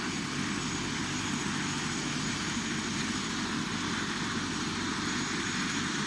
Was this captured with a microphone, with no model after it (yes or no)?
yes